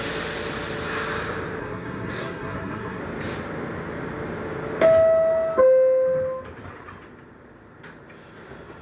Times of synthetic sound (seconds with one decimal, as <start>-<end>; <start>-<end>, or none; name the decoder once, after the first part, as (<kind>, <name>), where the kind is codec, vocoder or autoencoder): 1.6-3.0 (codec, SNAC)